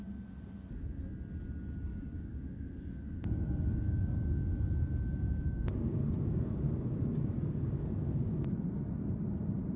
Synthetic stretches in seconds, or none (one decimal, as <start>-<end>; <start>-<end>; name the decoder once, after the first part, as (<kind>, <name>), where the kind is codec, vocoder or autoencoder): 1.9-4.5 (codec, DAC); 5.1-8.6